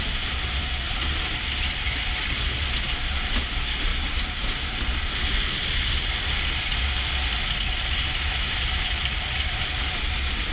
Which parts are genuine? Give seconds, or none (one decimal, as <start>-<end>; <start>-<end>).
0.0-3.9; 4.4-10.5